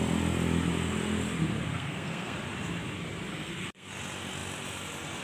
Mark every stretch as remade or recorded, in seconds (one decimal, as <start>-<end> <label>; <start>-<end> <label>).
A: 0.0-1.7 recorded; 1.7-2.4 remade; 2.4-3.3 recorded; 3.3-3.9 remade; 3.9-5.2 recorded